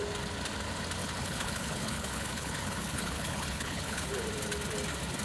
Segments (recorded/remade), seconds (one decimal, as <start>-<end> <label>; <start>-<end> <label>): 0.0-1.0 recorded; 1.0-4.1 remade; 4.1-5.2 recorded